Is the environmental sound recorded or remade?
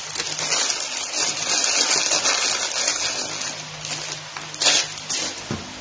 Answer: recorded